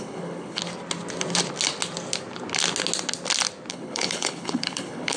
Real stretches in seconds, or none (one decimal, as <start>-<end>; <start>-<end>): 0.6-3.7